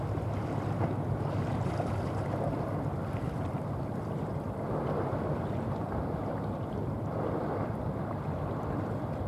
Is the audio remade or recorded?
remade